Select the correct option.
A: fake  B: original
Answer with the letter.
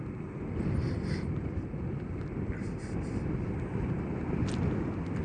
B